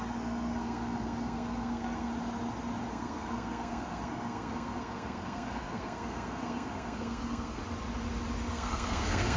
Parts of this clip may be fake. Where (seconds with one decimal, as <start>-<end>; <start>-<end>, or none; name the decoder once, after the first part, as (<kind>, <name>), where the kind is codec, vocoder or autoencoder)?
0.0-2.1 (codec, SNAC); 2.9-7.6; 8.5-9.4